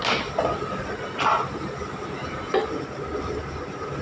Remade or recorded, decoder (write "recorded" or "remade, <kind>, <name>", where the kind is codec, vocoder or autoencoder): recorded